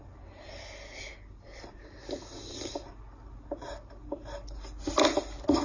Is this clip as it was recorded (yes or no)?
yes